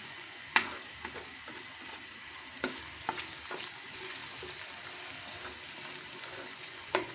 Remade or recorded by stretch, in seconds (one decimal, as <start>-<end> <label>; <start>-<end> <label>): 0.0-0.7 remade; 0.7-3.7 recorded; 3.7-4.2 remade; 4.2-6.1 recorded; 6.1-7.1 remade